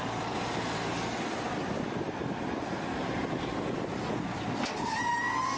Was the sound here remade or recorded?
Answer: recorded